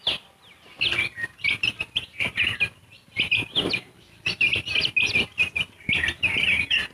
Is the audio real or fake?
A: real